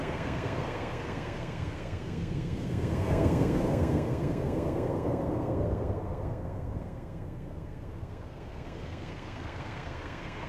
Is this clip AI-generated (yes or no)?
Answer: yes